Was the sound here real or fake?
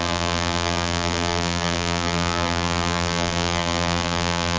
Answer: fake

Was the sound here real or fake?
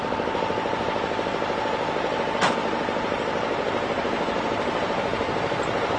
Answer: fake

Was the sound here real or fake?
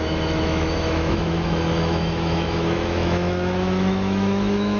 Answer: fake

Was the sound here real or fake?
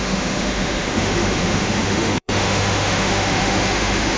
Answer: fake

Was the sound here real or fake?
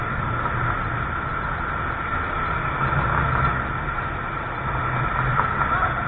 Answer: real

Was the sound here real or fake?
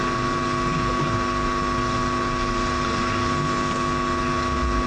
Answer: real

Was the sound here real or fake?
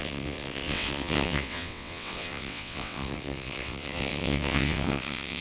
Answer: fake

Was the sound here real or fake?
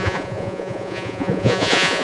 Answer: fake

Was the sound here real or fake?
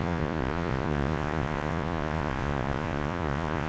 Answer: fake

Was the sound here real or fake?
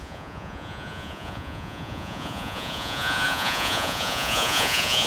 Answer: fake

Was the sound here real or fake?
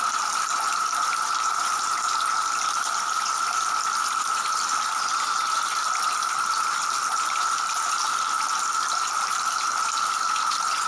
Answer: real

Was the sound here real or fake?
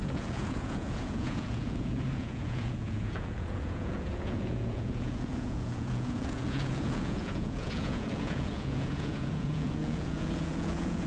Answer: fake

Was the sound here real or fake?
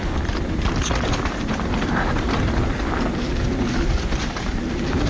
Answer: real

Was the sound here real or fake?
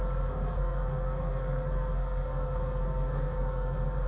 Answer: fake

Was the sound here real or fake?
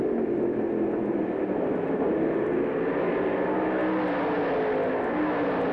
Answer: real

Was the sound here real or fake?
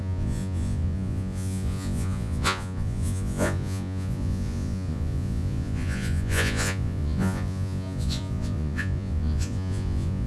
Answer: fake